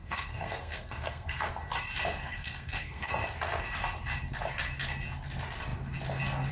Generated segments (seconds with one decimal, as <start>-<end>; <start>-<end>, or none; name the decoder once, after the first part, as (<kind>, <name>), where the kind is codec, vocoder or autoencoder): 0.0-1.5 (codec, SNAC); 2.2-3.1